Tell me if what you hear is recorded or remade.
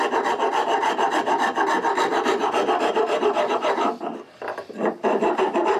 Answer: remade